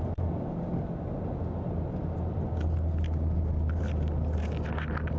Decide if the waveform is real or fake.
real